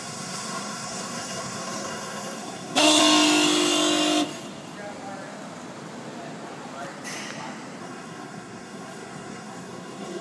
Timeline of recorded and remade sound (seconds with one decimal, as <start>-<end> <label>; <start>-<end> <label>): 0.0-3.0 remade; 3.0-7.8 recorded; 7.8-10.2 remade